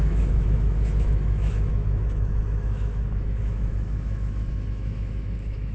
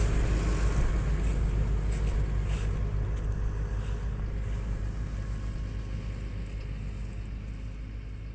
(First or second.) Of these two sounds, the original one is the second